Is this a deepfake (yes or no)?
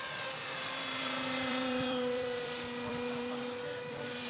yes